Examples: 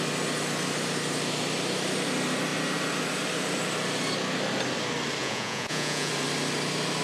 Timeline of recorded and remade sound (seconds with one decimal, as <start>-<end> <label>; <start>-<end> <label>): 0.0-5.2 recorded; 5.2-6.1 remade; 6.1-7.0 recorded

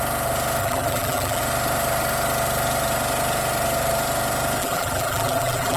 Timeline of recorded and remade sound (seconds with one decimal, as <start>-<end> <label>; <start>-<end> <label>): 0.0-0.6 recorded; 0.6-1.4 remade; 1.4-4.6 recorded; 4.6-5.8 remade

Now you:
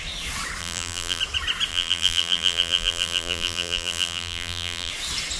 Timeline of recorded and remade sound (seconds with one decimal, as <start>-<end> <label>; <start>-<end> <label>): 0.0-0.6 recorded; 0.6-1.2 remade; 1.2-1.7 recorded; 1.7-4.9 remade; 4.9-5.4 recorded